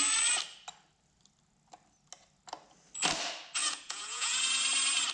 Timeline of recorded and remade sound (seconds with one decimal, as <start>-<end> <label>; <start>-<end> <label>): 0.0-3.6 recorded; 3.6-4.4 remade; 4.4-5.1 recorded